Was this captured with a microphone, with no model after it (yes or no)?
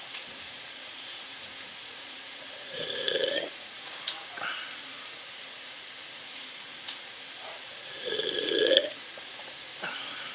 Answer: no